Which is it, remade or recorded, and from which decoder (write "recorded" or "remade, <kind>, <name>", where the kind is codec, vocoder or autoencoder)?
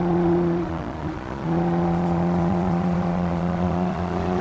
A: remade, vocoder, Vocos